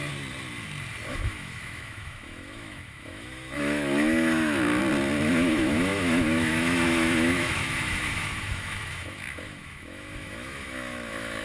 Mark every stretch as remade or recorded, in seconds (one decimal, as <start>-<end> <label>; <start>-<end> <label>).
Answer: 0.0-1.1 recorded; 1.1-4.8 remade; 4.8-5.3 recorded; 5.3-11.4 remade